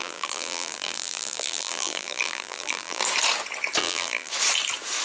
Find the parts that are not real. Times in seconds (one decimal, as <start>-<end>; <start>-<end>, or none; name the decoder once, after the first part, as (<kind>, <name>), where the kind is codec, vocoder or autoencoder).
0.0-3.0 (vocoder, BigVGAN v2); 3.8-4.3